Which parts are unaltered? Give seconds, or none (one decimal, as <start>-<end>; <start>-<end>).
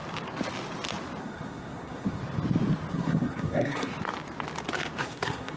0.0-1.2; 2.2-2.9; 3.9-5.0